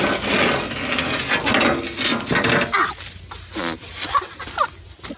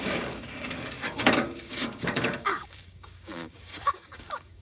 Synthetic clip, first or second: second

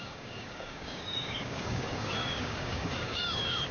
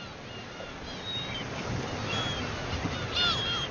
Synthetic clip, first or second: first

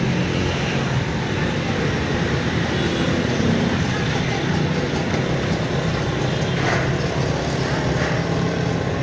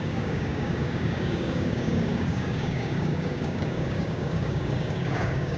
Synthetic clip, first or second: second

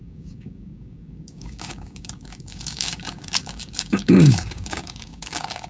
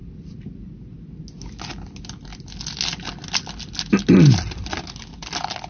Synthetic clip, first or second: first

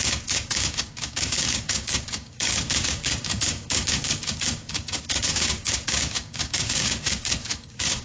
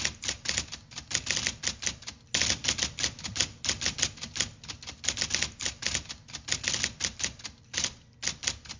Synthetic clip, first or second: first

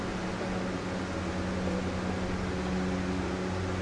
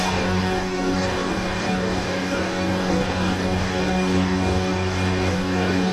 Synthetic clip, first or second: second